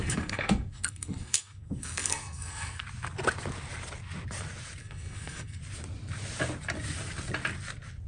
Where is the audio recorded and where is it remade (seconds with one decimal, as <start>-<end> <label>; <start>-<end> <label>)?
0.0-2.8 remade; 2.8-4.8 recorded; 4.8-5.6 remade; 5.6-8.1 recorded